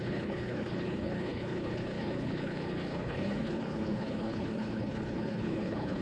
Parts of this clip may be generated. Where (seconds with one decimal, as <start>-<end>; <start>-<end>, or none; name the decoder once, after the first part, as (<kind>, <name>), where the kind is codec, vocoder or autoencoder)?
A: 0.0-6.0 (codec, HILCodec)